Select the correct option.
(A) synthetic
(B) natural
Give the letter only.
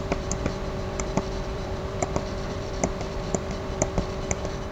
A